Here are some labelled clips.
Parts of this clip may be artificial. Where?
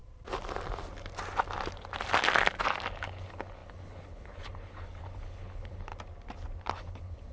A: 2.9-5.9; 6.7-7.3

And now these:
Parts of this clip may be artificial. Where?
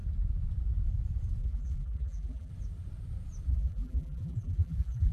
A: 1.4-2.5; 3.5-5.1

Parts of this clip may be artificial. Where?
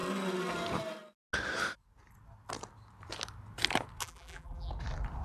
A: 4.0-4.7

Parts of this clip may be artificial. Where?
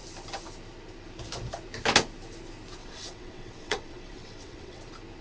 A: 2.8-4.8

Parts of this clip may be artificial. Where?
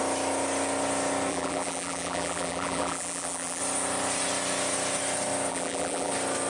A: 1.3-3.6; 5.5-6.1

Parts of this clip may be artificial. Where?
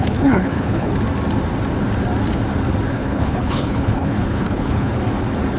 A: 0.0-0.9; 2.9-4.9